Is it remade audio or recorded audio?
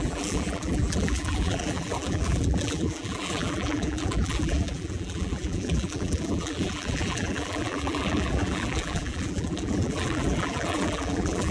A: remade